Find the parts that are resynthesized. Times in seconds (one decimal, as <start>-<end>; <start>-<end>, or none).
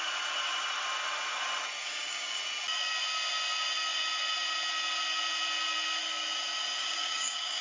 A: 1.8-2.4; 6.8-7.6